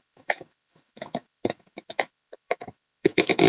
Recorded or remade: remade